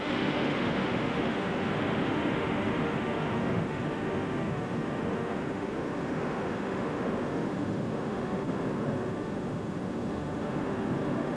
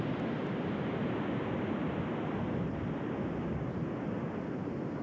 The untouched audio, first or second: second